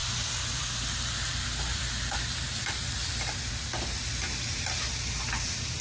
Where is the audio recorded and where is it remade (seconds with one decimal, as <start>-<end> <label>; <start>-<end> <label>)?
0.0-5.8 recorded